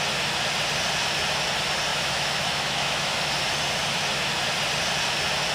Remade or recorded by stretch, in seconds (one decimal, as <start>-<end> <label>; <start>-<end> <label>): 0.0-1.9 recorded; 1.9-3.2 remade; 3.2-5.5 recorded